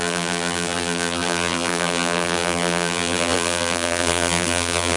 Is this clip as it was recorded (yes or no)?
no